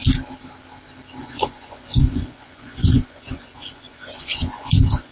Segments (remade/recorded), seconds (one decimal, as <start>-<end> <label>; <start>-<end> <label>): 0.0-1.2 recorded; 1.2-5.1 remade